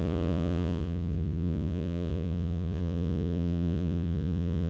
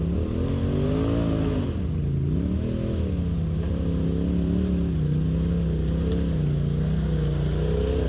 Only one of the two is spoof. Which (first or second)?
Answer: first